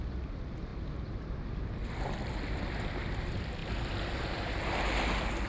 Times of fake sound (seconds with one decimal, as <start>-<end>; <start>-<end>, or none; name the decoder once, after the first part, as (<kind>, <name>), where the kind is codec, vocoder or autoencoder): none